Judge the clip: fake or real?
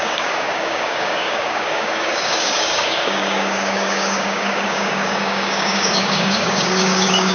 fake